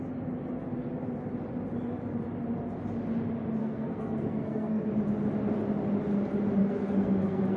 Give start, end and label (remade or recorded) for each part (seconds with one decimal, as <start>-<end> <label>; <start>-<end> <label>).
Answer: 0.0-3.6 recorded; 3.6-4.9 remade; 4.9-6.6 recorded; 6.6-7.6 remade